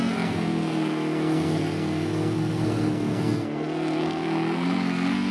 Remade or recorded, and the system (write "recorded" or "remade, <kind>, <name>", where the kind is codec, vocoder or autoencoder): remade, codec, SNAC